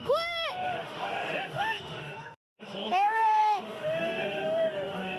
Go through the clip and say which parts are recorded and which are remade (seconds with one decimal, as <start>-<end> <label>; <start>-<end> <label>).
0.0-5.2 remade